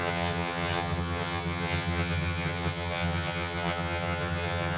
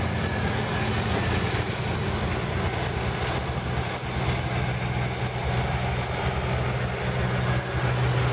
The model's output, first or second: first